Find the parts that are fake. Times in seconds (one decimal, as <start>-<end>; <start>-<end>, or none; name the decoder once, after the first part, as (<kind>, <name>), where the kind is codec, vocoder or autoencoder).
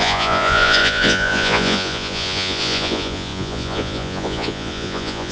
0.0-5.3 (vocoder, Vocos)